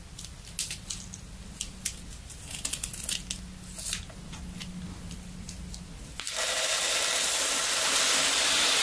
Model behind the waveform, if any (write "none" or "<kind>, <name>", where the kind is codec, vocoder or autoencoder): none